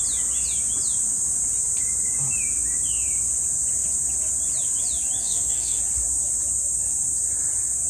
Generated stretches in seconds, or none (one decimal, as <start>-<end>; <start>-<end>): 5.2-5.8